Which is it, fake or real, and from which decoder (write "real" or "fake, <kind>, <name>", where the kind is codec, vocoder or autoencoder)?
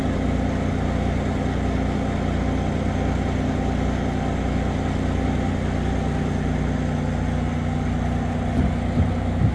real